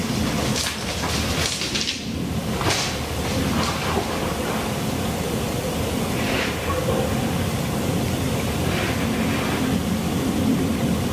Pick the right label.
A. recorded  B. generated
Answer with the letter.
A